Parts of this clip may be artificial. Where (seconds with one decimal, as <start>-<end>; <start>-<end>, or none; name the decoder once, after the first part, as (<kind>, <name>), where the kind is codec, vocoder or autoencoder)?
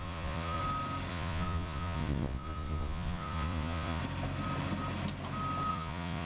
0.0-0.6 (vocoder, Vocos); 1.1-4.0; 5.7-6.3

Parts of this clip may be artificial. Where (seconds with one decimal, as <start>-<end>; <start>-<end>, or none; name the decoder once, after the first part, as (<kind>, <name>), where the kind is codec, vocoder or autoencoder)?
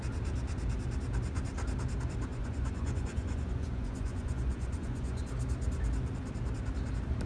2.3-5.2 (vocoder, Vocos)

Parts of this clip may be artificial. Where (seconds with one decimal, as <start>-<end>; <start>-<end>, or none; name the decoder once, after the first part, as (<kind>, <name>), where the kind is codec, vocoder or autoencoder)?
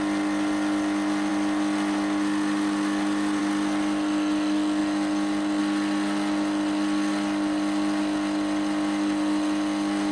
none